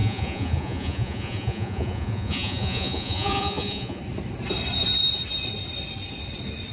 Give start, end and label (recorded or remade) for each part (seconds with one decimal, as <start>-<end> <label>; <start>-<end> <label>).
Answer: 0.0-4.0 remade; 4.0-6.7 recorded